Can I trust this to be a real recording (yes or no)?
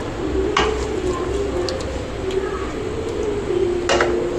yes